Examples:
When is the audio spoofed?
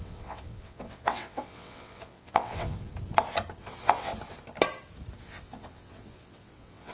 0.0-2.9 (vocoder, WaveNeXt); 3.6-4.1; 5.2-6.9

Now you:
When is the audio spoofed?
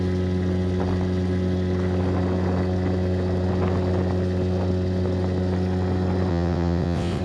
6.3-7.2 (vocoder, WaveNeXt)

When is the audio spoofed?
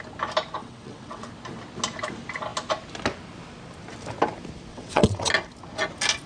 0.6-1.3 (vocoder, WaveNeXt); 4.7-5.3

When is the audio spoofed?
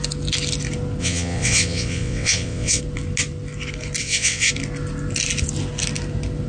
1.0-2.8 (vocoder, WaveNeXt); 4.0-4.5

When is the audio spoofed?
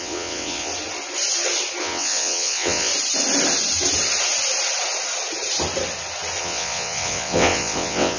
0.0-0.7 (vocoder, WaveNeXt); 1.8-2.9; 6.4-8.2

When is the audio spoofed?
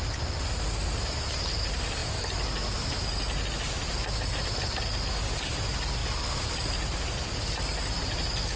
none